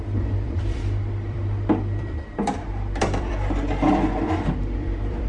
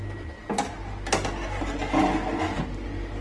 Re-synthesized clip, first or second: first